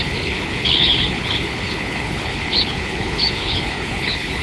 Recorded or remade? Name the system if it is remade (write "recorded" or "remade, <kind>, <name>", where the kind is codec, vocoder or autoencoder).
remade, codec, HILCodec